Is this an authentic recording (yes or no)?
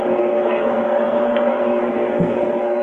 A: no